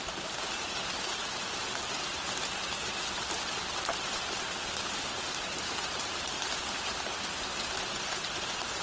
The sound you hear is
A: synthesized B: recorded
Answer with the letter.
B